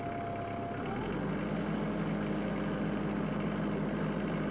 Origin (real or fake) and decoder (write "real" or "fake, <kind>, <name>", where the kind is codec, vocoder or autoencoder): real